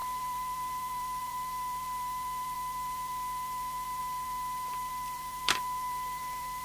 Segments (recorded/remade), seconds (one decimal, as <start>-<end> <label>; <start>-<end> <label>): 0.0-6.6 remade